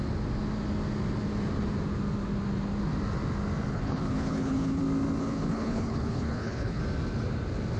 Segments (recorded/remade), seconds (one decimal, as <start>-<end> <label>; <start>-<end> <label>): 0.0-3.7 recorded; 3.7-4.8 remade; 4.8-5.2 recorded; 5.2-6.8 remade; 6.8-7.8 recorded